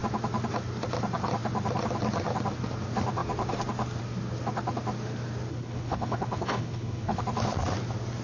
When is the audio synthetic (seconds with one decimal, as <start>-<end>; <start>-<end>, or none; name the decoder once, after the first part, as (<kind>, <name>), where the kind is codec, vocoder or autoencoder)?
5.5-7.2 (codec, HILCodec)